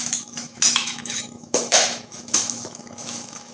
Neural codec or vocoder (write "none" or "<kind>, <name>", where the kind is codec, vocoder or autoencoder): autoencoder, DAC-VAE